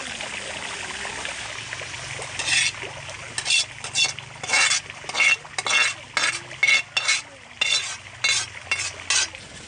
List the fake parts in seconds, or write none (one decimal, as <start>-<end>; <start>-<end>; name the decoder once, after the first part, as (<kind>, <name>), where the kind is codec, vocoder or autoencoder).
none